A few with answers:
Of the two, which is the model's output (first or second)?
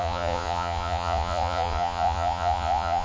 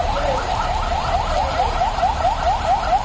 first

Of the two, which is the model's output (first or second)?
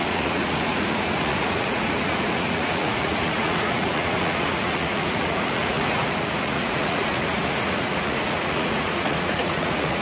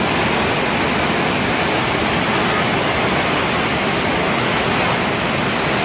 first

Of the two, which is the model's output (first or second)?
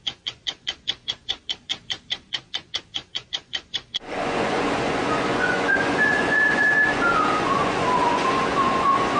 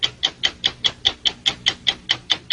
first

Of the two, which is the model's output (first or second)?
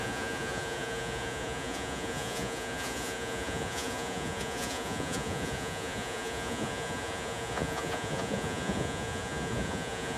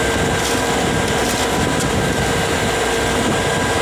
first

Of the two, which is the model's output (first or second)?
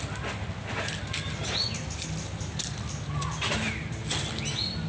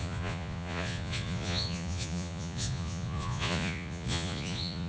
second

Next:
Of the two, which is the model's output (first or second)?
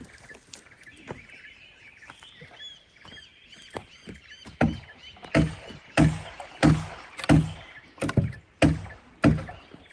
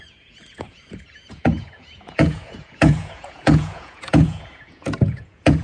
second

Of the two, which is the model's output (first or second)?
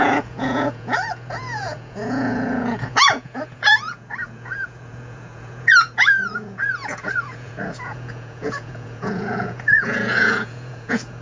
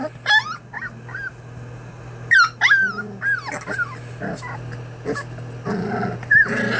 first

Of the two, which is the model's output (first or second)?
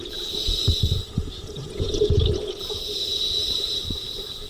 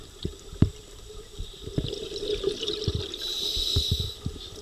first